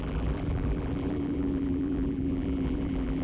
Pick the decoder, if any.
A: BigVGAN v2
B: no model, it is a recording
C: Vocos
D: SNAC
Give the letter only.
A